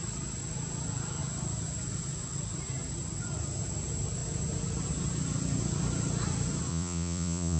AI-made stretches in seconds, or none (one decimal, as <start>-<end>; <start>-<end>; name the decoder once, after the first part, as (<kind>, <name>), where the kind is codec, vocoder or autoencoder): 6.7-7.6 (vocoder, Vocos)